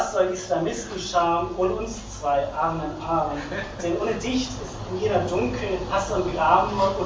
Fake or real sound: real